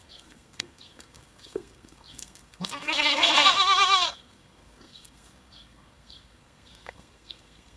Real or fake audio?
fake